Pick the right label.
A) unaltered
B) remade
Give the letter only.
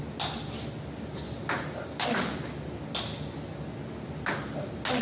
A